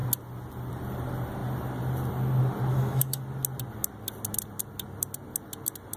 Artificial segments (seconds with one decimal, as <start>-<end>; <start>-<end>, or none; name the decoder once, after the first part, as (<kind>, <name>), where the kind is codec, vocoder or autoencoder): 2.7-3.2 (autoencoder, DAC-VAE)